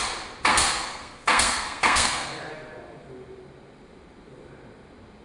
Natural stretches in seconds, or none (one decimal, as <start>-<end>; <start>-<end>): 0.0-0.5; 2.5-5.2